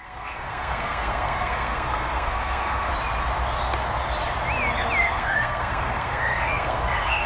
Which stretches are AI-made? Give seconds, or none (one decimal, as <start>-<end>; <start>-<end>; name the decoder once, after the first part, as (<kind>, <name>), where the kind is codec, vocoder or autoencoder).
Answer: 0.0-2.9 (codec, SNAC); 5.0-7.3